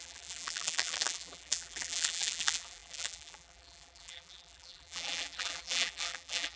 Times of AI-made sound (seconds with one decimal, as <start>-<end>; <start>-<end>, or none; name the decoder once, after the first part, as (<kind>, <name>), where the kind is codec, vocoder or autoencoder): 0.0-6.6 (vocoder, BigVGAN v2)